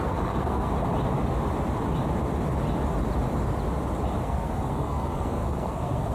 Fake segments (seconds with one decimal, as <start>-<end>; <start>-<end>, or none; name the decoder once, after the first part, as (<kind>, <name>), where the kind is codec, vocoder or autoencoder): 0.0-0.7 (codec, SNAC); 4.2-6.1